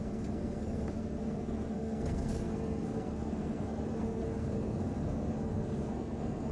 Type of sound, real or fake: fake